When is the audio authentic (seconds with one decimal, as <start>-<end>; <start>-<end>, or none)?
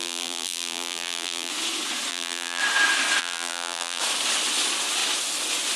1.5-2.1; 2.6-3.2; 4.0-5.8